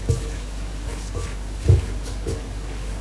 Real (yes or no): no